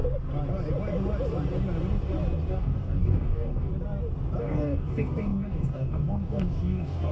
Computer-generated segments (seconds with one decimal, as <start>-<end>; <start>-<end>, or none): 2.5-3.7; 4.4-7.1